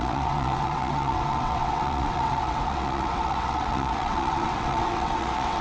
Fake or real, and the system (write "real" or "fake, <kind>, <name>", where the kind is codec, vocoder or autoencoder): fake, vocoder, WaveNeXt